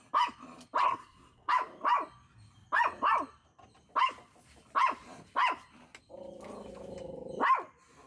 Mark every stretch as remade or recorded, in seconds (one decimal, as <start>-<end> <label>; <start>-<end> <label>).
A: 0.0-0.8 recorded; 0.8-1.5 remade; 1.5-8.1 recorded